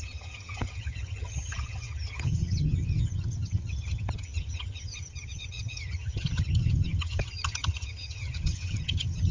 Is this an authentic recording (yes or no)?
no